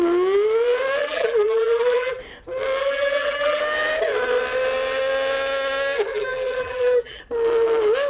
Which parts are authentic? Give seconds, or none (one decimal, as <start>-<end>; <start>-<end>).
0.0-1.0; 2.2-2.8; 3.6-6.1; 7.2-8.1